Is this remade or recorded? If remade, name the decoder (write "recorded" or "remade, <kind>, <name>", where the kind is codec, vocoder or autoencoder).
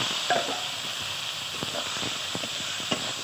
recorded